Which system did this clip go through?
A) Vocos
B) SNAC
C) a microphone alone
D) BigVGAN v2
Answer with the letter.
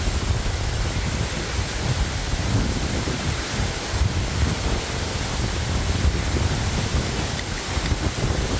C